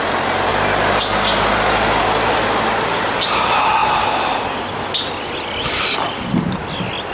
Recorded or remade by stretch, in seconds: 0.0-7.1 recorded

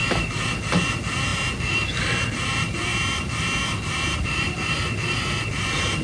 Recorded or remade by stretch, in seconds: 0.0-6.0 recorded

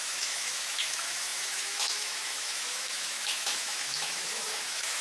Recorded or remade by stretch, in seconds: 0.0-5.0 remade

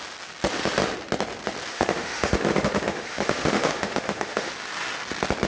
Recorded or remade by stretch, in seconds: 0.0-1.7 recorded; 1.7-4.5 remade; 4.5-5.5 recorded